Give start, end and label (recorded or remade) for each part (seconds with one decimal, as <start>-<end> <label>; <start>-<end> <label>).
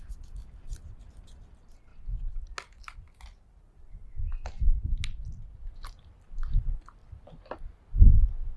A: 0.0-0.4 recorded; 0.4-1.1 remade; 1.1-8.6 recorded